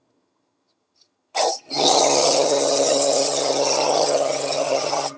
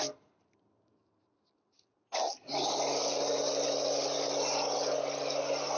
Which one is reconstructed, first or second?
first